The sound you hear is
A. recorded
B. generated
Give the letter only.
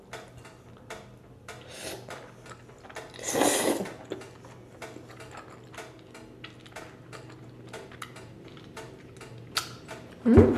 A